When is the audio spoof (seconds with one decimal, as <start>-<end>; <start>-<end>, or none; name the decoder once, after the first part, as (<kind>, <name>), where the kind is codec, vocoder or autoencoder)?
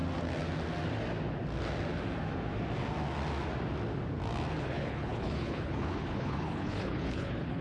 4.6-7.6 (codec, HILCodec)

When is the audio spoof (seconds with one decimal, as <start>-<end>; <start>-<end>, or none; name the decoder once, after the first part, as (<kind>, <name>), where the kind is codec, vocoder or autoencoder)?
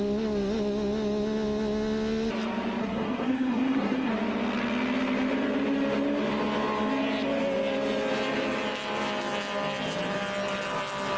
2.8-4.1 (codec, SNAC)